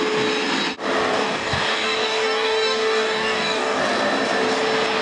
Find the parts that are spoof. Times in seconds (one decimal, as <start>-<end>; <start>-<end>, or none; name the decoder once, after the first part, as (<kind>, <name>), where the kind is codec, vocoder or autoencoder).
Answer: 1.1-3.8 (codec, DAC)